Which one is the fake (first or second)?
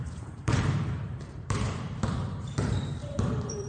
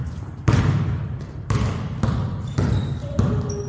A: first